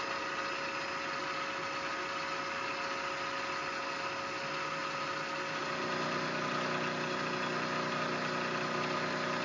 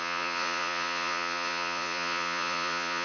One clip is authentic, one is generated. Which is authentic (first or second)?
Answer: first